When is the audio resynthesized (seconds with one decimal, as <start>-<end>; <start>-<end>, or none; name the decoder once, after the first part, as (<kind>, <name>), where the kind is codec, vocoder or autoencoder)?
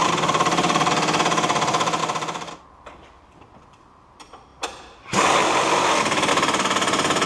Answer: 0.0-0.9 (vocoder, BigVGAN v2); 4.5-6.3